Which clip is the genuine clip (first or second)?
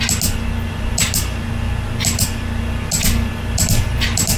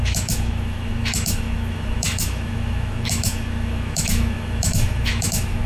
first